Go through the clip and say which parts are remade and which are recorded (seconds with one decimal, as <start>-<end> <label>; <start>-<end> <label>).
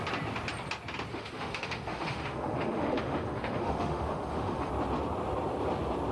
0.0-1.1 recorded; 1.1-4.7 remade; 4.7-6.1 recorded